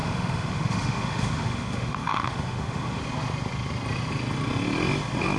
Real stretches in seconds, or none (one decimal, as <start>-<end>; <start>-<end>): 3.0-5.4